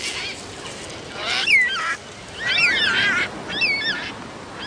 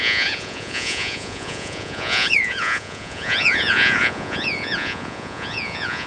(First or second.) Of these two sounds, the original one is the first